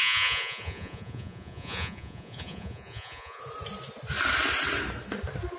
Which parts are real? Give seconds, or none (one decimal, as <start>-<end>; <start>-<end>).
3.4-5.6